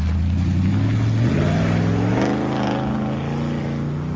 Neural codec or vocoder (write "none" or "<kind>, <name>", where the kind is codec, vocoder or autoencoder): none